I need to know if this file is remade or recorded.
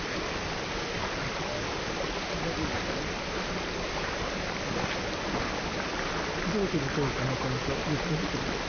recorded